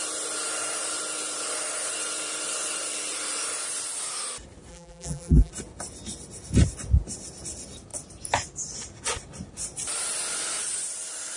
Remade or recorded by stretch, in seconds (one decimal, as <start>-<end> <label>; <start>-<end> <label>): 0.0-4.7 recorded; 4.7-5.5 remade; 5.5-11.4 recorded